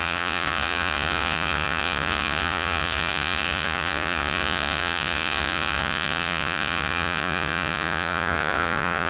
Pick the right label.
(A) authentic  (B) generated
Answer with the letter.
B